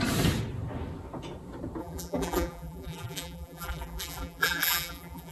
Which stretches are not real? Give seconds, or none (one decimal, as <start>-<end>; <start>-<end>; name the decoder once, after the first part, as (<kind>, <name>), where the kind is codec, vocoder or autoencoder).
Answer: 1.8-5.3 (vocoder, BigVGAN v2)